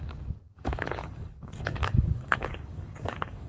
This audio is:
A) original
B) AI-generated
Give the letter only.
B